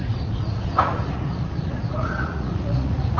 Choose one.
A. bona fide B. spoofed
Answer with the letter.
B